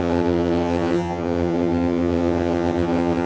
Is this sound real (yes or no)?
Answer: no